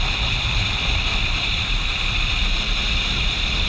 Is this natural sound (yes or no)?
no